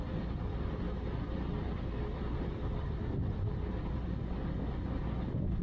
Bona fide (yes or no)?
no